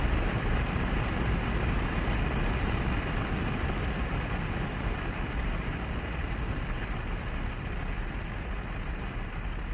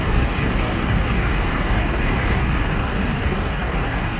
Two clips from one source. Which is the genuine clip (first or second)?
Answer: first